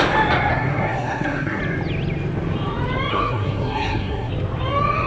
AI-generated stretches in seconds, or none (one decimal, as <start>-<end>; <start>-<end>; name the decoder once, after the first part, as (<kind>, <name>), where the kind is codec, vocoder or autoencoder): 0.5-1.6 (codec, SNAC); 3.1-4.3